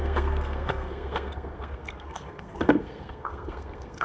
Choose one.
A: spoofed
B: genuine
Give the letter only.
A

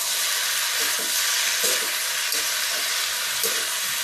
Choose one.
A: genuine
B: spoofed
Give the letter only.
A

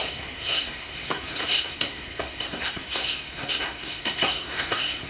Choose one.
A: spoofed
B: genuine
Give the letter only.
A